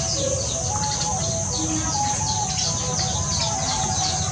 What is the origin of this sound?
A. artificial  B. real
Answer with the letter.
B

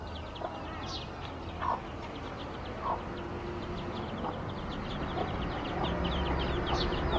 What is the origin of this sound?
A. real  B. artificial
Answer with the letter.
A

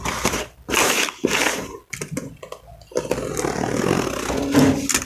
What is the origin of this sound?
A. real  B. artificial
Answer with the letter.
A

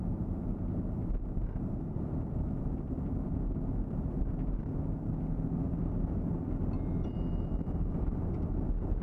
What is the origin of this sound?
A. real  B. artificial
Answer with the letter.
A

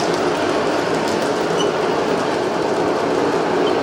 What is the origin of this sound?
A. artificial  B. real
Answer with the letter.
B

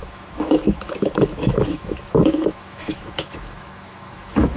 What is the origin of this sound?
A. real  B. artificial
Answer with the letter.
B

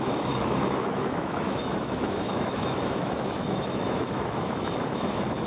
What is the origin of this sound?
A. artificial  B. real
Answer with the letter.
A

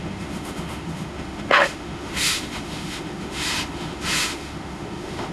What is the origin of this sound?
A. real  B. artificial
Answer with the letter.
B